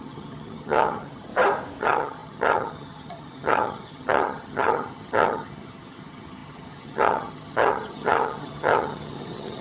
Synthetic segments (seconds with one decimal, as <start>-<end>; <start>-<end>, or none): 0.0-1.3; 1.8-9.6